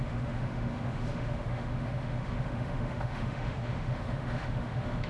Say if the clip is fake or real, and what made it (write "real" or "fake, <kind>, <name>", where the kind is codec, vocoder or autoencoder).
fake, autoencoder, DAC-VAE